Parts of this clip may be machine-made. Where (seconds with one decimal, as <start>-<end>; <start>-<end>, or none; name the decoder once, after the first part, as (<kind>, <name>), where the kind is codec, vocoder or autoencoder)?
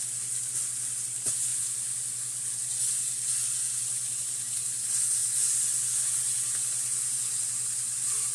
none